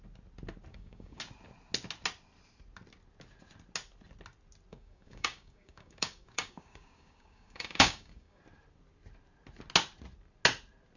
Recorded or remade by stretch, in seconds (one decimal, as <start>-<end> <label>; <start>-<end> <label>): 0.0-0.7 recorded; 0.7-1.2 remade; 1.2-4.7 recorded; 4.7-8.4 remade; 8.4-11.0 recorded